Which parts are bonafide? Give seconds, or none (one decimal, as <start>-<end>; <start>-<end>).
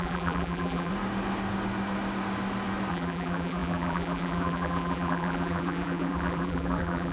0.9-2.9